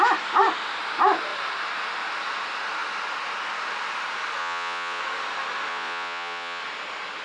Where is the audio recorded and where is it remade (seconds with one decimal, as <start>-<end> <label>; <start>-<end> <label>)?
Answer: 0.0-4.4 recorded; 4.4-5.0 remade; 5.0-5.7 recorded; 5.7-6.6 remade; 6.6-7.2 recorded